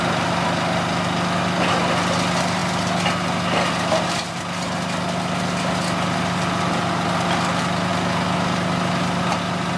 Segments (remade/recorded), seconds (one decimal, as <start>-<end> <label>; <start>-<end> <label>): 0.0-9.8 recorded